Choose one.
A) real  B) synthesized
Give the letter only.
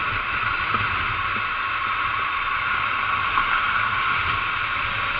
A